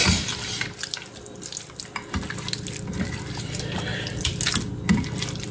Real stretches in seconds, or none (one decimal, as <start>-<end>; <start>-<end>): 0.0-3.3; 3.9-5.5